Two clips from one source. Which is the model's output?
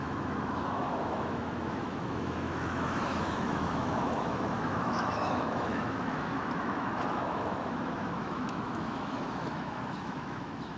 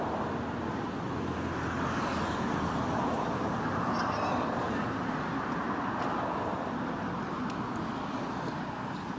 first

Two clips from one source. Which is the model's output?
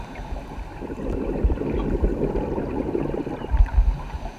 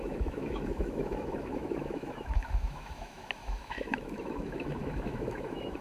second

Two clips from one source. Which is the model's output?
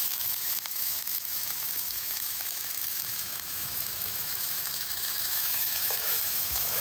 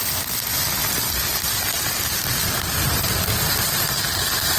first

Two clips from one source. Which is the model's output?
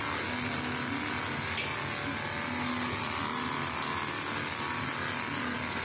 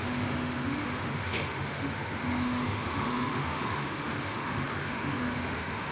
second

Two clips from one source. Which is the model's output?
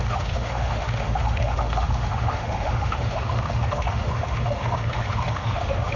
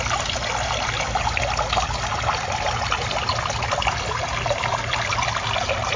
first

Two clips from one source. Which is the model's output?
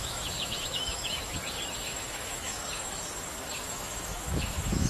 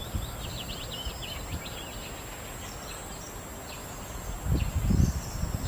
first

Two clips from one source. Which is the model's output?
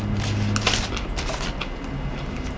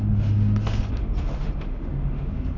second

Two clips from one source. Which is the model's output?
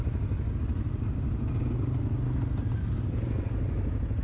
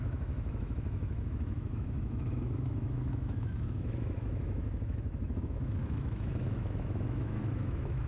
second